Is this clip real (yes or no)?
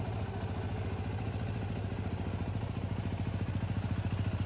yes